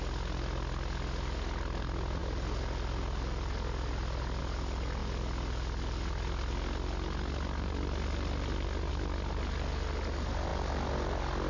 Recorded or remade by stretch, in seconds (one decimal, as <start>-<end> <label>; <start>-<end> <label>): 0.0-11.5 recorded